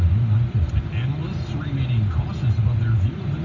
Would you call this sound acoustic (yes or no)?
yes